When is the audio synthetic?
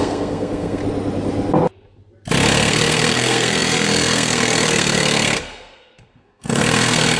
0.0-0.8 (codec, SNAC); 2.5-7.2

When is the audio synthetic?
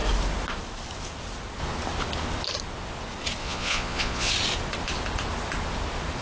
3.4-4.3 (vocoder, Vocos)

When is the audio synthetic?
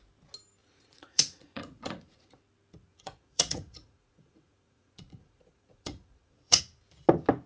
0.6-2.4 (vocoder, Vocos); 2.9-6.6